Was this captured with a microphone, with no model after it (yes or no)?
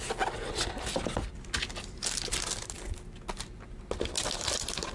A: yes